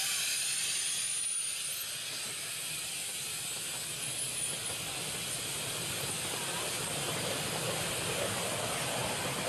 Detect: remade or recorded recorded